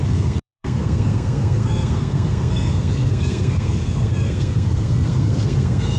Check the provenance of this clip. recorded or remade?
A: remade